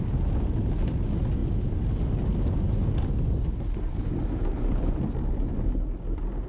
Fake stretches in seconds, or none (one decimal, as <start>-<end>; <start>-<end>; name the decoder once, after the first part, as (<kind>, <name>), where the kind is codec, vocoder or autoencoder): none